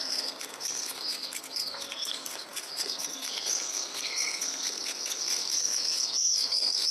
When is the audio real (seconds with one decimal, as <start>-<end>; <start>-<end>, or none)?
none